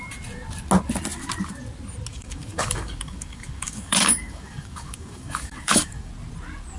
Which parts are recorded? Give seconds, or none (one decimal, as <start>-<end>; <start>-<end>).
0.0-2.1; 6.1-6.8